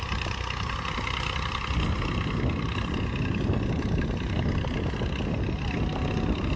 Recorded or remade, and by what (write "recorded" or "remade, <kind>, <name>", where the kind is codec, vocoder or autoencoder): recorded